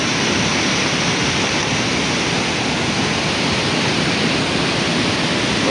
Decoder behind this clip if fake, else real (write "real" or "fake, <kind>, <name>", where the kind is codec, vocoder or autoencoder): real